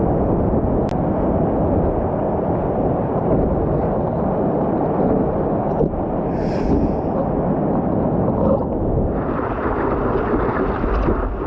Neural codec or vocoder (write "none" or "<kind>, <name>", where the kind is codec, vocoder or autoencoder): none